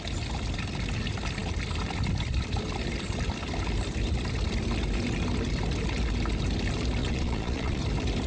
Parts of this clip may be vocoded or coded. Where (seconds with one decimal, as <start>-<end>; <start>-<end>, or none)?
7.0-7.8